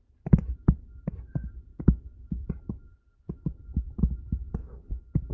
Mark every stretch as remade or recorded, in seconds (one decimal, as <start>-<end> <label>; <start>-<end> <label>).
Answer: 0.0-4.6 recorded; 4.6-5.3 remade